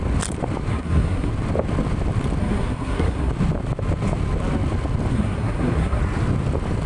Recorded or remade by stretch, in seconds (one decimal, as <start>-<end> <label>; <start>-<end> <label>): 0.0-0.7 recorded; 0.7-1.3 remade; 1.3-2.4 recorded; 2.4-3.3 remade; 3.3-5.1 recorded; 5.1-6.0 remade; 6.0-6.9 recorded